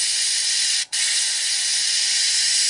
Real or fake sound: fake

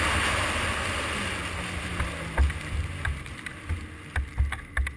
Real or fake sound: real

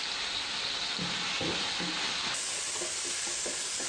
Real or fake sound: real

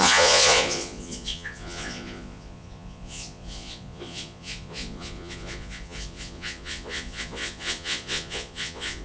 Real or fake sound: fake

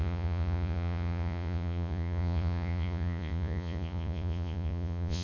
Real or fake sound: fake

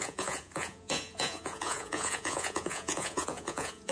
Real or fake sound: fake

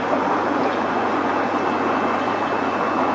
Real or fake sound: fake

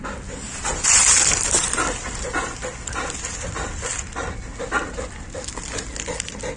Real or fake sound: real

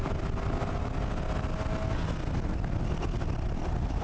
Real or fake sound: real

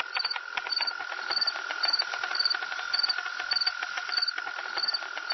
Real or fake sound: real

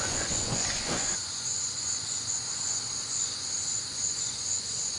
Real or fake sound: fake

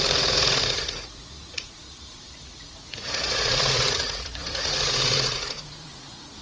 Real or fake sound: fake